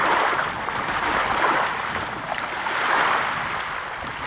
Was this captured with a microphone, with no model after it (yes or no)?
yes